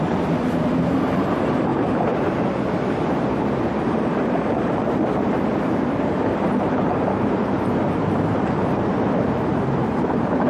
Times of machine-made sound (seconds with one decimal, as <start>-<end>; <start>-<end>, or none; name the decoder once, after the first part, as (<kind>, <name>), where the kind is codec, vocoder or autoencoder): 0.0-10.5 (vocoder, BigVGAN v2)